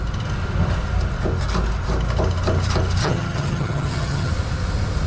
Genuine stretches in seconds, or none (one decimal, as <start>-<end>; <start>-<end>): 0.0-3.0; 4.3-5.1